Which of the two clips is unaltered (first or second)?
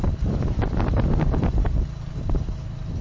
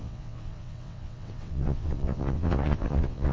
first